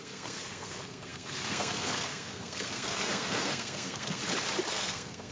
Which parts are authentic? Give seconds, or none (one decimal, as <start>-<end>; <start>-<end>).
4.2-4.7